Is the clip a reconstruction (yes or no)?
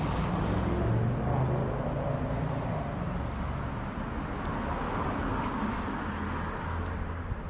no